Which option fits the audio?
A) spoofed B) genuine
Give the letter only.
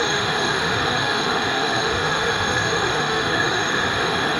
A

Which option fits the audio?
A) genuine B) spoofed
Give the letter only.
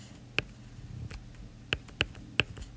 A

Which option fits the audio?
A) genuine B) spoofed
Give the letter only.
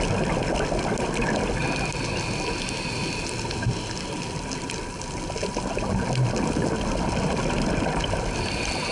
A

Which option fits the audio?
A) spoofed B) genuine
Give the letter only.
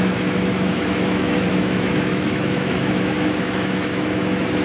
A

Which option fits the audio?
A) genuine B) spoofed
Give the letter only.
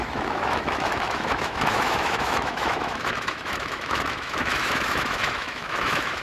B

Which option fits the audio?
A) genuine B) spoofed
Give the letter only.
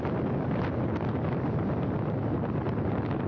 A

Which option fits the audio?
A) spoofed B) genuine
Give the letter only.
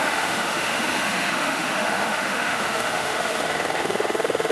A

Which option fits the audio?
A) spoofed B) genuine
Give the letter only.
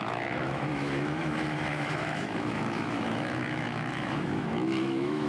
A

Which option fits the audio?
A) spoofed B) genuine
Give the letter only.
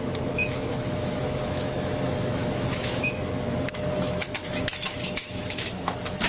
A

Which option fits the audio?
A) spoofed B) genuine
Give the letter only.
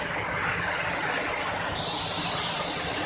B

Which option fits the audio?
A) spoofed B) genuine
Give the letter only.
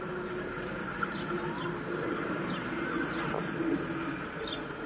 B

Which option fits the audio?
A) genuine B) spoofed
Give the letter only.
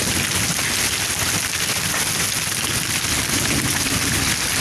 A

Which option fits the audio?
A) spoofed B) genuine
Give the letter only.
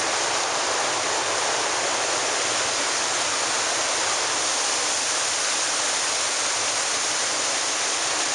B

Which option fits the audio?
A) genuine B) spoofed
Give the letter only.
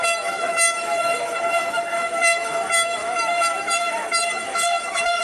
B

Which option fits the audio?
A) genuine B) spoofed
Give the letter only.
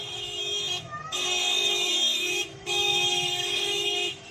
B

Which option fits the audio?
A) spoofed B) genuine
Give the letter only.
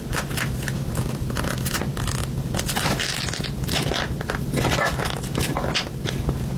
B